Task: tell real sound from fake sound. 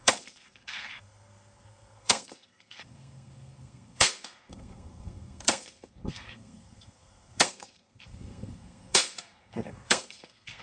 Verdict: fake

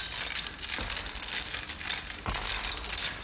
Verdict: real